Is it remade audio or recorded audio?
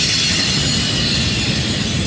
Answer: recorded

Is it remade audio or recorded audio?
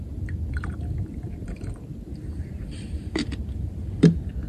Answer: recorded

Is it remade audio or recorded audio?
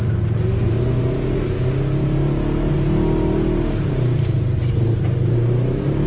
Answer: recorded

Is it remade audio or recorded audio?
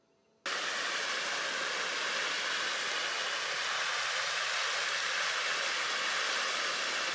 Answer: recorded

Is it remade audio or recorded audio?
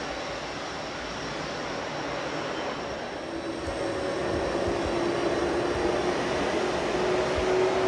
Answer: recorded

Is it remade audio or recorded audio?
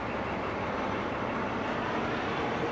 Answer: recorded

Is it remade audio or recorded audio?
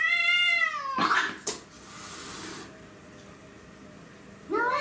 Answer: recorded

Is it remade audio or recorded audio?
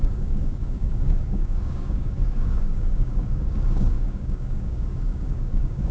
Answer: remade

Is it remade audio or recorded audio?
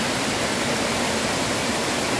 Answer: recorded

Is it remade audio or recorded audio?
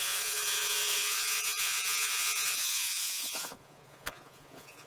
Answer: remade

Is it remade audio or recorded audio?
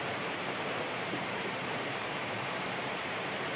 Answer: remade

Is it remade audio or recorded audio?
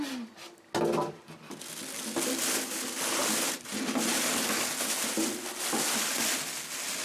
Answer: recorded